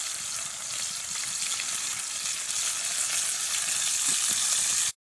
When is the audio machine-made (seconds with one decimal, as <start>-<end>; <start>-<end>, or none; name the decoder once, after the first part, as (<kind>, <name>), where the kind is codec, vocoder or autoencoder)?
none